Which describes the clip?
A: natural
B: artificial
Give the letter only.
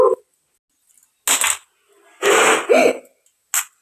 A